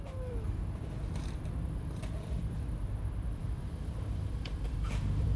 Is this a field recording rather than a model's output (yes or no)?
no